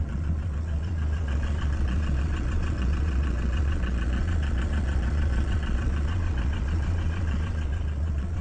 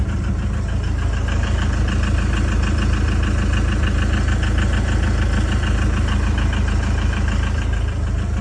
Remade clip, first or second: first